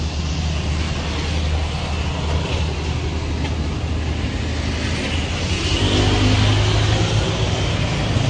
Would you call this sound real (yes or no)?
yes